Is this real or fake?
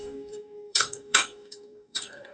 fake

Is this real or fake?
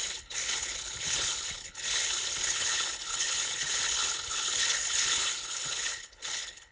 fake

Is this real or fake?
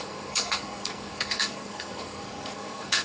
fake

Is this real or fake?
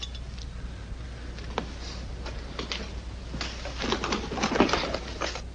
real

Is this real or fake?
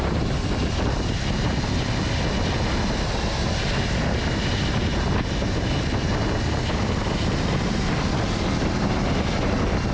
real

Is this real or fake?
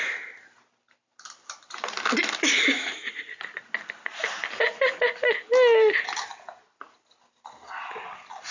real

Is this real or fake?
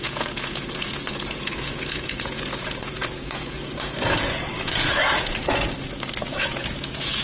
fake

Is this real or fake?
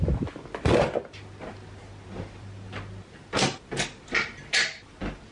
real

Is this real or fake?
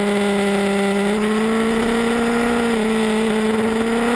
real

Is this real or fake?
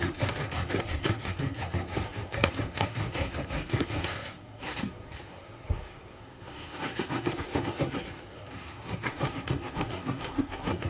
fake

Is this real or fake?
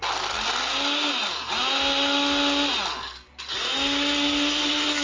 real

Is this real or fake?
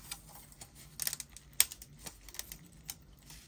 real